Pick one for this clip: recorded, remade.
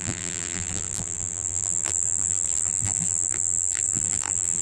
remade